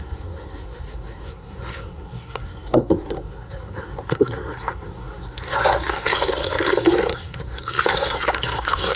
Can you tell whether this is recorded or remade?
remade